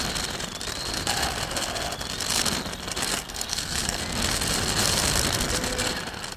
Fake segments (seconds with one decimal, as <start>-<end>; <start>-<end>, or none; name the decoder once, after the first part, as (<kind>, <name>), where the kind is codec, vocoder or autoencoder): 3.0-4.0 (codec, SNAC)